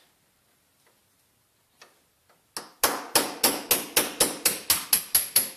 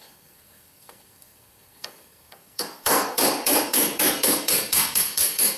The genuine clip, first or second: first